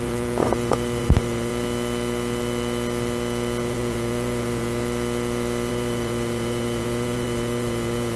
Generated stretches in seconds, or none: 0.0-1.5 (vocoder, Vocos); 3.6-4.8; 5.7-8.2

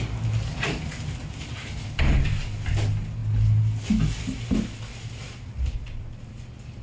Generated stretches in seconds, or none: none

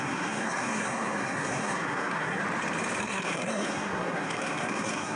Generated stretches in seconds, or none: 0.0-2.4 (codec, SNAC); 3.0-5.2